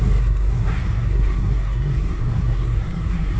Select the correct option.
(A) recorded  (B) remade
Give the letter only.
B